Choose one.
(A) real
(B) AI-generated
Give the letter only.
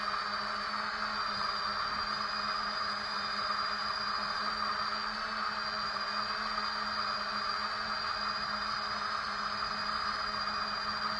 A